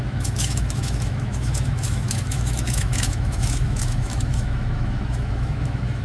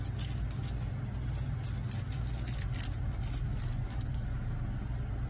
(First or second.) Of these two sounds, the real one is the second